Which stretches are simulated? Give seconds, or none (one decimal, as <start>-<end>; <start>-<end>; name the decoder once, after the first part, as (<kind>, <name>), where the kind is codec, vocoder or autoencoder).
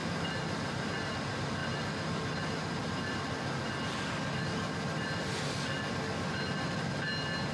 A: none